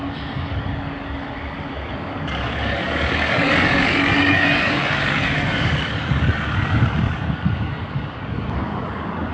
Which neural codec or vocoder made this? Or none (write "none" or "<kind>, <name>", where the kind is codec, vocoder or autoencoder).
codec, DAC